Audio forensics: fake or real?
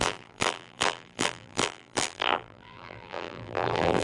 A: fake